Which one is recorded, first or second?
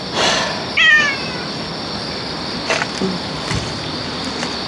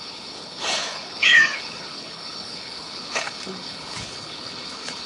first